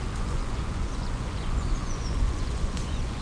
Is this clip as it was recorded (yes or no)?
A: no